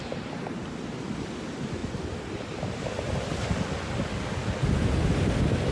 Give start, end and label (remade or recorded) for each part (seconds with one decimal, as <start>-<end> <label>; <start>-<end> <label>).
0.0-5.7 recorded